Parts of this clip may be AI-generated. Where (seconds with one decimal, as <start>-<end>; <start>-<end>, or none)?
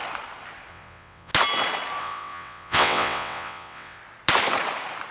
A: 0.7-1.3; 2.0-4.0